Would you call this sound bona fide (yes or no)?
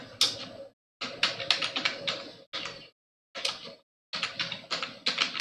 yes